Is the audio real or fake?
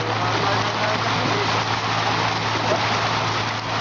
real